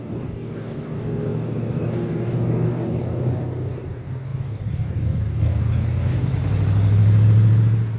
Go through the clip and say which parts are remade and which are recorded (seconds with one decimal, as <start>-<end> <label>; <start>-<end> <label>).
0.0-6.3 remade; 6.3-8.0 recorded